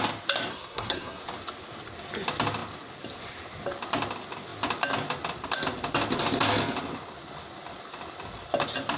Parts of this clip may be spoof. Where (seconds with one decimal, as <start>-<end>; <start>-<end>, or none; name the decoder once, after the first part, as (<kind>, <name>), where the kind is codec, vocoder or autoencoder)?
0.5-1.2 (codec, SNAC)